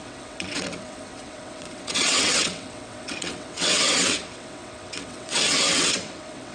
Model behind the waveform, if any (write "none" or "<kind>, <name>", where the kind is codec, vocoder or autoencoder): vocoder, WaveNeXt